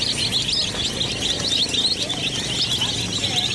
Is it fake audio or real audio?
real